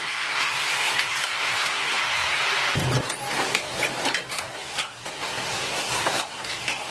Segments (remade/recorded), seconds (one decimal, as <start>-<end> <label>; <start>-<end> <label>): 0.0-2.4 remade; 2.4-3.3 recorded; 3.3-3.8 remade; 3.8-4.3 recorded; 4.3-6.9 remade